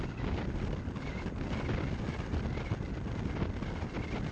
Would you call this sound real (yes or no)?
yes